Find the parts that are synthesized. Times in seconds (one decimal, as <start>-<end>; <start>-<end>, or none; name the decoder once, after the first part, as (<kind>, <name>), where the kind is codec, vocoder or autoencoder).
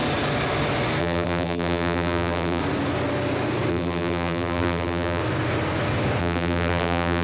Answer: 1.0-2.6 (vocoder, BigVGAN v2); 3.7-5.2; 6.2-7.2